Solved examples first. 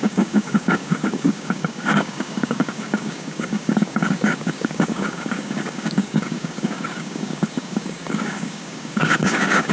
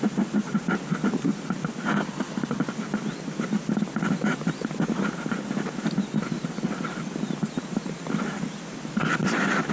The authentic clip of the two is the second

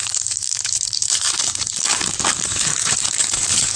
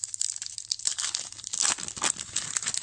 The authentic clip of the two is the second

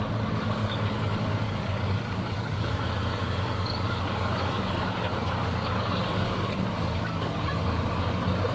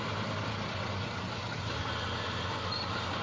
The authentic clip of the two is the second